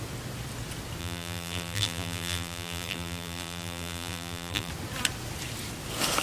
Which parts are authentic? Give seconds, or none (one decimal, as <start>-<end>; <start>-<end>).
0.0-1.0; 4.7-6.2